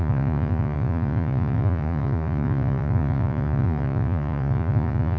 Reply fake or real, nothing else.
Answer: fake